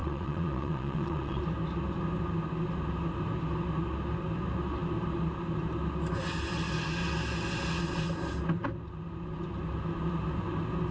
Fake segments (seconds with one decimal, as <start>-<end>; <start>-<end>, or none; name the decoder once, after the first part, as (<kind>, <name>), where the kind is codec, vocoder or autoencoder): 0.0-1.4 (vocoder, WaveNeXt)